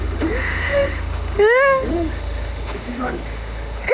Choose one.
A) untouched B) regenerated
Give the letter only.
B